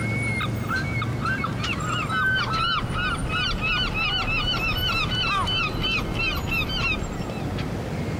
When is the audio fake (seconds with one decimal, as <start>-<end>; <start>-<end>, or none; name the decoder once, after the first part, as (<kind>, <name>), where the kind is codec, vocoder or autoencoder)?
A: none